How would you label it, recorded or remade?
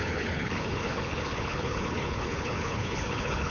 remade